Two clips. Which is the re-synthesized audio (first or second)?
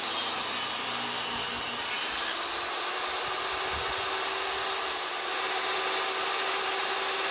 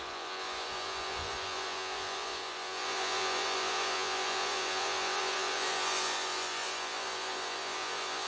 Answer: second